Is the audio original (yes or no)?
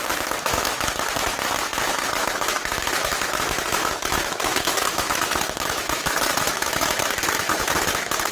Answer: no